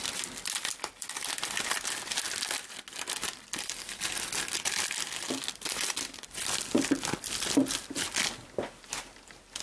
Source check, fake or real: real